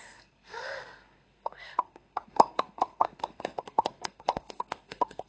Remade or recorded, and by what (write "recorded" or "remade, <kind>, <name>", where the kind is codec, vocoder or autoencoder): remade, codec, SNAC